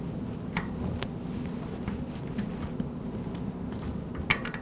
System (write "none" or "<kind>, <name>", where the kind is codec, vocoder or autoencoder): none